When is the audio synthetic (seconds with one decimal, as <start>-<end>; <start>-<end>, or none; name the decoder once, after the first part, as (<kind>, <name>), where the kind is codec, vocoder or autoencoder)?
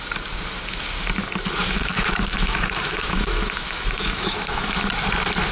1.6-4.9 (autoencoder, DAC-VAE)